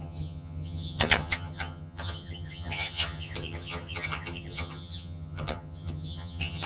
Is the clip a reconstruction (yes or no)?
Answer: yes